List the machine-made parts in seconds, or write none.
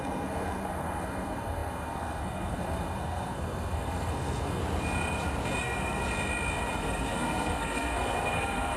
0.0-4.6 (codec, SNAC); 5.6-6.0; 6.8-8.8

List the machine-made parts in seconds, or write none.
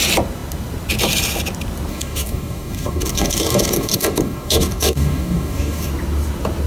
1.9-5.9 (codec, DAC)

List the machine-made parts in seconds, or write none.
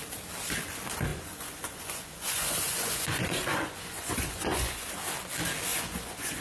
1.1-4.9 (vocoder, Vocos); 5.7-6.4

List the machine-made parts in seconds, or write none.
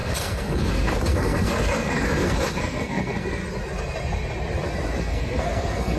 0.0-3.4 (codec, SNAC); 5.0-6.0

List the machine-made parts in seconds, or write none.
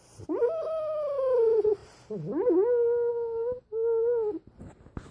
none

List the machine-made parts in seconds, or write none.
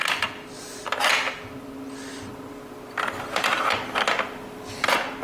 none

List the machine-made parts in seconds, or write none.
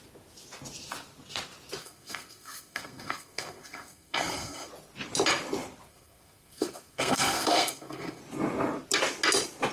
1.8-4.7 (codec, SNAC); 5.9-8.2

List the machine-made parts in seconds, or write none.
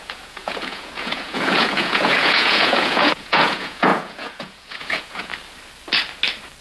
0.0-5.3 (vocoder, Vocos)